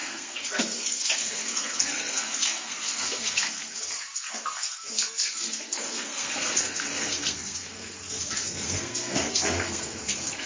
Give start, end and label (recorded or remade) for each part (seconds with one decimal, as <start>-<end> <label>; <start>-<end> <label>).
0.0-10.5 remade